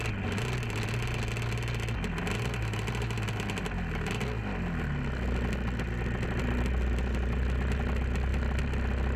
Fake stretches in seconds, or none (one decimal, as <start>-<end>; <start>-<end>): none